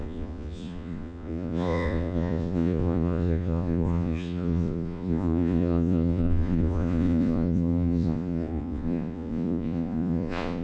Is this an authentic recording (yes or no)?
no